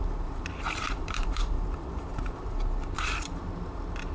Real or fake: fake